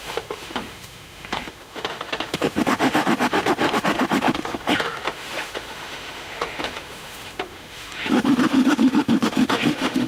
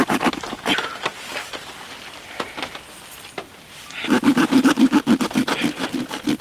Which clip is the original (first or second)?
second